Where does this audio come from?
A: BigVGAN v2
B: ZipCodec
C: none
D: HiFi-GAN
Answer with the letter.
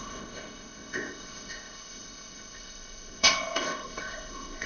B